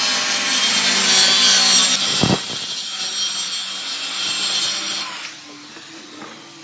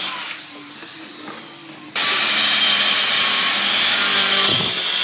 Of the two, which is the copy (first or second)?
second